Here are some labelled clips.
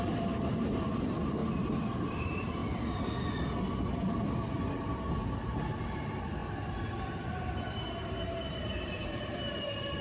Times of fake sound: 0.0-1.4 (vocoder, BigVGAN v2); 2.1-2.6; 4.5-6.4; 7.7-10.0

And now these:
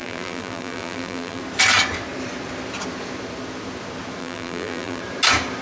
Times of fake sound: 0.0-1.4 (vocoder, BigVGAN v2); 4.2-5.0